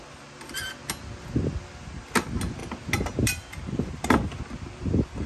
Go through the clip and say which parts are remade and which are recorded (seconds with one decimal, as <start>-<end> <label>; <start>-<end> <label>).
0.0-5.3 recorded

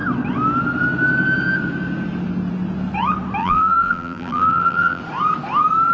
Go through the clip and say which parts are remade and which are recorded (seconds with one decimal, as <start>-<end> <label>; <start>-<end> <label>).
0.0-3.4 recorded; 3.4-5.0 remade; 5.0-5.9 recorded

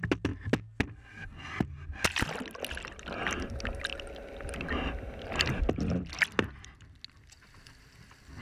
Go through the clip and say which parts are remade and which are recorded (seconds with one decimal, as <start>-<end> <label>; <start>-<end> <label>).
0.0-8.4 recorded

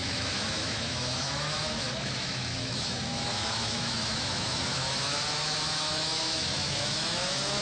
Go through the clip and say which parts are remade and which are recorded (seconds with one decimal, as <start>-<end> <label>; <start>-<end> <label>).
0.0-7.6 remade

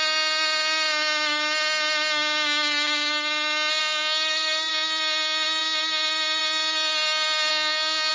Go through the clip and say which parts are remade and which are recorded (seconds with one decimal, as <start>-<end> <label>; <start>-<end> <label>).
0.0-3.8 recorded; 3.8-4.7 remade; 4.7-7.5 recorded; 7.5-8.1 remade

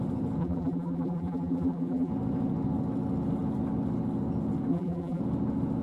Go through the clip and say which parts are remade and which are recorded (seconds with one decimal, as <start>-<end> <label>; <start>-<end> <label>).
0.0-0.4 recorded; 0.4-2.1 remade; 2.1-4.7 recorded; 4.7-5.2 remade; 5.2-5.8 recorded

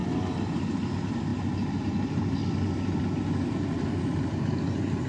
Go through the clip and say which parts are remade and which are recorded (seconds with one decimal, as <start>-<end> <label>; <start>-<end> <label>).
0.0-5.1 recorded